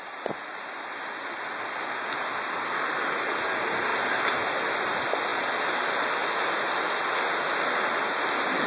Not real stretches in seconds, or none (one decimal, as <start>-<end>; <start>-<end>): none